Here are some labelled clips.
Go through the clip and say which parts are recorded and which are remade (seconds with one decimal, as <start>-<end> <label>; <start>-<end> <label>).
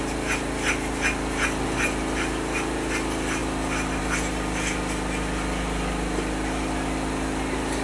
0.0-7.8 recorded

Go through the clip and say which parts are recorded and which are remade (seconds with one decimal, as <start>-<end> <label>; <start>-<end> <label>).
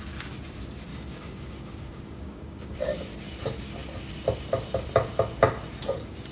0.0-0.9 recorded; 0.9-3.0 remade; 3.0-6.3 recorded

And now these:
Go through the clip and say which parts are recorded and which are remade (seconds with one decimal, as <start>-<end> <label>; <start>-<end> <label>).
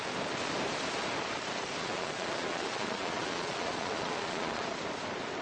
0.0-1.8 recorded; 1.8-4.6 remade; 4.6-5.4 recorded